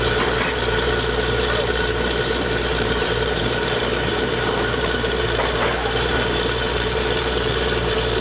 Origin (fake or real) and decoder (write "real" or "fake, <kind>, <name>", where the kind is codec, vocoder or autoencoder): fake, vocoder, BigVGAN v2